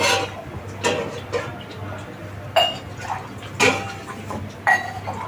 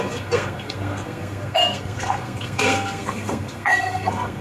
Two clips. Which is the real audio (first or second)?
first